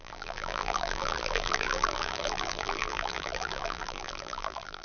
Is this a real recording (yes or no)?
no